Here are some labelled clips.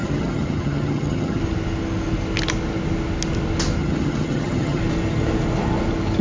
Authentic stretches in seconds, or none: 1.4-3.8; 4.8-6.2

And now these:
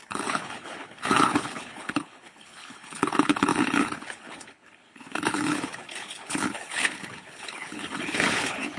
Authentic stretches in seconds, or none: none

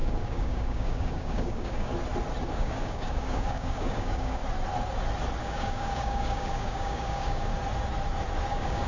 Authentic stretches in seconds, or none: 1.9-2.5; 4.4-5.4; 7.5-8.5